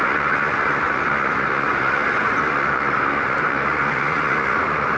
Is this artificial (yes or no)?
yes